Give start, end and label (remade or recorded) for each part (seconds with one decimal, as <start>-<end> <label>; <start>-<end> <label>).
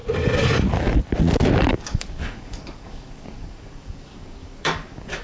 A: 0.0-1.7 recorded; 1.7-5.2 remade